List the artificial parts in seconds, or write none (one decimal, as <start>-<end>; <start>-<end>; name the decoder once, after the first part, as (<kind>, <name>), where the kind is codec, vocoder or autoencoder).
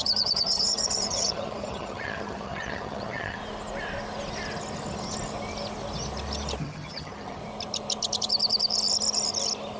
0.0-3.4 (vocoder, HiFi-GAN); 6.6-7.4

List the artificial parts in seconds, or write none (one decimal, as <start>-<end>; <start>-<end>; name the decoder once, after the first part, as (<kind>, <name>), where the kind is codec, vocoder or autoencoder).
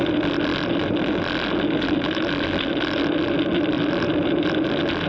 none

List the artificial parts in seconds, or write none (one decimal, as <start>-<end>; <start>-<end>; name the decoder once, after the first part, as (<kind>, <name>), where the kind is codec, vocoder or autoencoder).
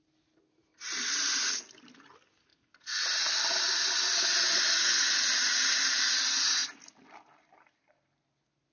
none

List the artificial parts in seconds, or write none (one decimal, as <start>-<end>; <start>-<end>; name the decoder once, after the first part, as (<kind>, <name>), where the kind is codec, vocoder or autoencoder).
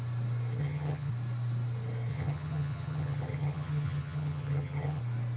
0.6-1.1 (vocoder, HiFi-GAN); 2.1-5.0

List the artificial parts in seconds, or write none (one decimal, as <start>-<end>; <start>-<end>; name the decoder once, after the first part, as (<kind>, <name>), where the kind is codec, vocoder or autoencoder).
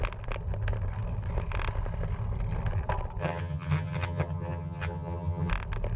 3.2-5.5 (vocoder, HiFi-GAN)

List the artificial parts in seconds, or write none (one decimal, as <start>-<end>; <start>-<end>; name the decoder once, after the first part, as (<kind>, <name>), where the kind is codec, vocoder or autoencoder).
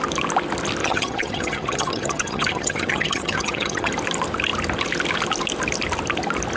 0.8-3.9 (vocoder, HiFi-GAN)